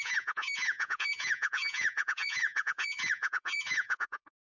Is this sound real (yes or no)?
no